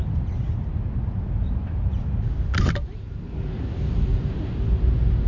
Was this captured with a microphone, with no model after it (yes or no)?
yes